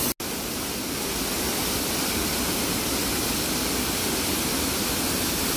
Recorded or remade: recorded